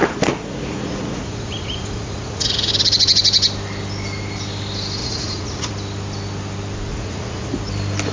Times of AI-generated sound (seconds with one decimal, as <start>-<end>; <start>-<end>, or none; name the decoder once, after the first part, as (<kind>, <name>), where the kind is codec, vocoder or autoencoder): 0.0-2.7 (vocoder, Vocos); 5.0-5.7; 6.9-7.6